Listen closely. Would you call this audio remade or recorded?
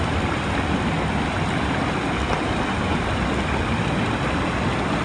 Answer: recorded